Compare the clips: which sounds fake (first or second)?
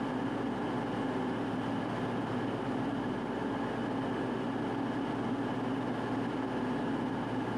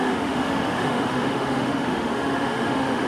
second